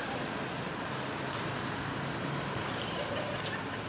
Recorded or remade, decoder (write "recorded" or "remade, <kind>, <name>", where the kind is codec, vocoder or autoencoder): recorded